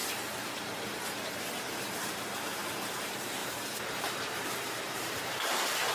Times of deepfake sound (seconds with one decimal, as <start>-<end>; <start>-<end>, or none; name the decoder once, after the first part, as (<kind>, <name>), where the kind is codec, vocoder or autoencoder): 1.9-5.9 (vocoder, BigVGAN v2)